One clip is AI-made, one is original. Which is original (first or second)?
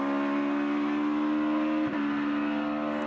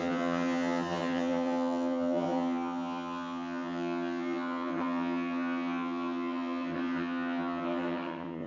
first